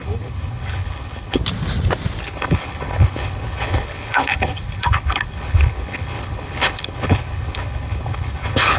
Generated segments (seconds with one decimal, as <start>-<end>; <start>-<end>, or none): 0.0-1.4; 2.2-8.8